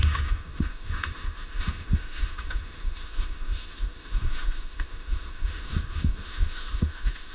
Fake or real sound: fake